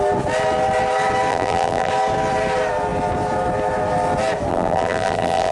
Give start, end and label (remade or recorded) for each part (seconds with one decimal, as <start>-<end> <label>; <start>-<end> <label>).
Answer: 0.0-1.3 recorded; 1.3-1.9 remade; 1.9-4.5 recorded; 4.5-5.5 remade

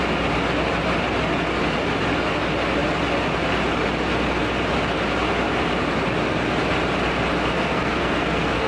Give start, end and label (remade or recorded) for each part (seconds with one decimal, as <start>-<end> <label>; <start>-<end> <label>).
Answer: 0.0-7.5 recorded; 7.5-8.7 remade

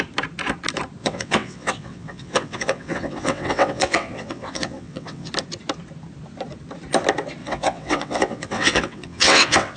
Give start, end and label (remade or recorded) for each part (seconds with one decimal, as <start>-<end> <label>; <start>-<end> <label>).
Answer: 0.0-1.0 recorded; 1.0-5.3 remade; 5.3-7.4 recorded; 7.4-9.8 remade

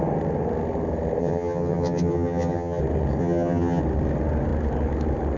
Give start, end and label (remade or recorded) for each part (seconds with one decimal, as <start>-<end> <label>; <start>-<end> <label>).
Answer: 0.0-1.2 recorded; 1.2-2.8 remade; 2.8-3.2 recorded; 3.2-3.8 remade; 3.8-5.4 recorded

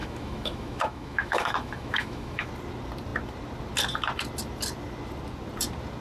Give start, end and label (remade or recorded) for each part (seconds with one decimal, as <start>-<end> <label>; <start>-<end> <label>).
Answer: 0.0-2.5 remade; 2.5-6.0 recorded

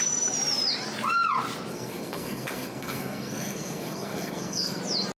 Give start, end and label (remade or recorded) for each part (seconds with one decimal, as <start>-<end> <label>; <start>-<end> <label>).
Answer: 0.0-1.7 recorded; 1.7-4.8 remade; 4.8-5.2 recorded